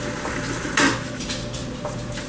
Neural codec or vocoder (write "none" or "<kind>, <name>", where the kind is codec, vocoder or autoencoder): none